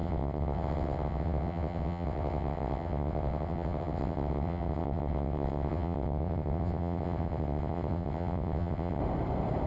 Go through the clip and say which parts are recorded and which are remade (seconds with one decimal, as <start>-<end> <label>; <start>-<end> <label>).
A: 0.0-9.0 remade; 9.0-9.7 recorded